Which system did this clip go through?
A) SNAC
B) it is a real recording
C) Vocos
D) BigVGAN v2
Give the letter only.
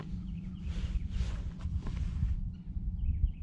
C